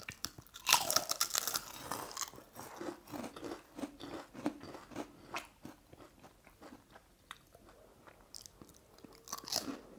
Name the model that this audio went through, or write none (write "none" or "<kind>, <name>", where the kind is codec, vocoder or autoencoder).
none